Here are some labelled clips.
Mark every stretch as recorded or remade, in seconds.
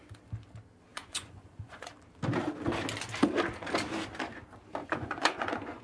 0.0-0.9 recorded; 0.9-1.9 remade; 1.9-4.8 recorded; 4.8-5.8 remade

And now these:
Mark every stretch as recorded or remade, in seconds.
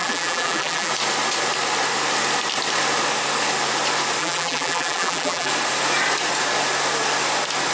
0.0-0.9 remade; 0.9-4.2 recorded; 4.2-5.5 remade; 5.5-7.7 recorded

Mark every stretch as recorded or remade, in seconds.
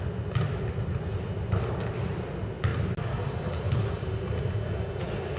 0.0-5.4 recorded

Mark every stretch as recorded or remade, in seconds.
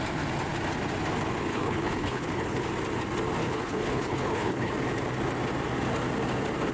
0.0-1.5 recorded; 1.5-2.7 remade; 2.7-3.4 recorded; 3.4-4.7 remade; 4.7-6.7 recorded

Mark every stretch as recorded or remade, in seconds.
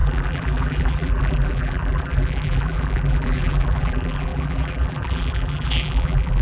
0.0-6.4 remade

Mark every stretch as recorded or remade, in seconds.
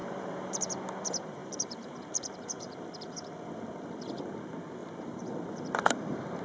0.0-0.7 remade; 0.7-1.4 recorded; 1.4-2.0 remade; 2.0-4.8 recorded; 4.8-5.3 remade; 5.3-6.4 recorded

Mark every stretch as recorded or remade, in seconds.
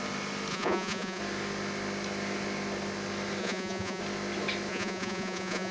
0.0-0.5 recorded; 0.5-1.2 remade; 1.2-3.4 recorded; 3.4-4.0 remade; 4.0-4.7 recorded; 4.7-5.7 remade